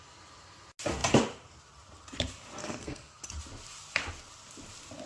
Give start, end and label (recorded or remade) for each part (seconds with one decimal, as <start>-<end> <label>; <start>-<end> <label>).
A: 0.0-2.6 recorded; 2.6-3.2 remade; 3.2-5.1 recorded